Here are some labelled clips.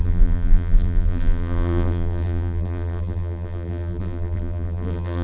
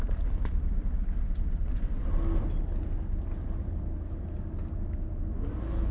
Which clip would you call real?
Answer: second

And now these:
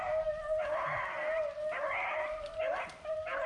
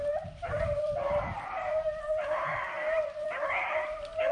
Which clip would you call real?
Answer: first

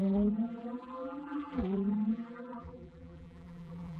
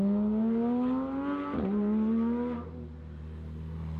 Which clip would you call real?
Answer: second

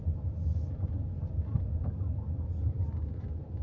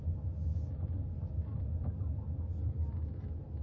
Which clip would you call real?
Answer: second